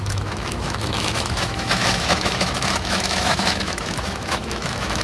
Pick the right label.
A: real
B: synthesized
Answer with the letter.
B